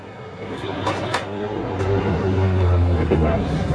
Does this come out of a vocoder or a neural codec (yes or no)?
yes